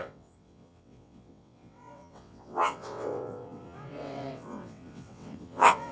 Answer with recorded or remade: remade